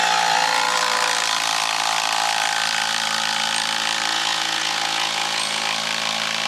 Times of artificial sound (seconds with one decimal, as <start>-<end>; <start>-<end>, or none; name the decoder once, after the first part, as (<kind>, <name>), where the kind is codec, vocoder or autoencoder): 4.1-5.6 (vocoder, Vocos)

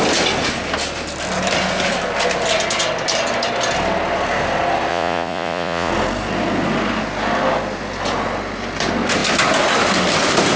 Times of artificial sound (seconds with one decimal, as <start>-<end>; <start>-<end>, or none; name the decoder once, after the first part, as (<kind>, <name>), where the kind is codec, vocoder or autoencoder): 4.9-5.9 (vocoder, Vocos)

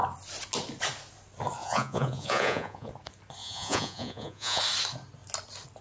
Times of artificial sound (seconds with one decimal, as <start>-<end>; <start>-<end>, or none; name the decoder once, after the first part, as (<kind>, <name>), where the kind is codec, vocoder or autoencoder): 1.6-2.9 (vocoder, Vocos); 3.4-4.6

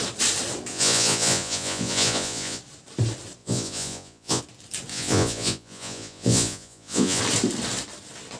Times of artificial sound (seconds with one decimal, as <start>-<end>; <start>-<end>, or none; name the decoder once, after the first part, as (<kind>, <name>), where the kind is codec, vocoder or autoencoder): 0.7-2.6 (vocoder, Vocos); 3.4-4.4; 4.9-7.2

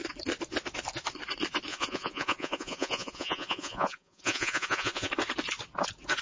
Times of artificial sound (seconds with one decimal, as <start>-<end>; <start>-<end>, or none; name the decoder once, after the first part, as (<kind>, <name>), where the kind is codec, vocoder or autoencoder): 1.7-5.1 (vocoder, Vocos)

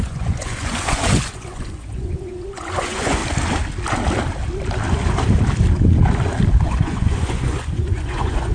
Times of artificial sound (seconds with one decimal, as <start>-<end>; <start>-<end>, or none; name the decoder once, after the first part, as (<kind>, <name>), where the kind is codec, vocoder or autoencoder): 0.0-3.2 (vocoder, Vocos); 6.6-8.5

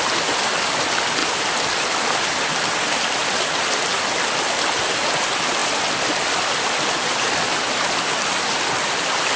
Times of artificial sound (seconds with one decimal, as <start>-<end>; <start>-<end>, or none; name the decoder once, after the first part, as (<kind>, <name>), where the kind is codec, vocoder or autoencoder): none